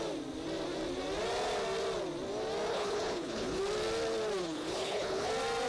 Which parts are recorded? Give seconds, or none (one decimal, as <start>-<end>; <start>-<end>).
0.0-2.7; 3.6-4.4; 5.3-5.7